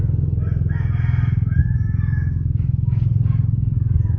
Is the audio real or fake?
real